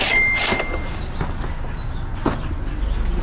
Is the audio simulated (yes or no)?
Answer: no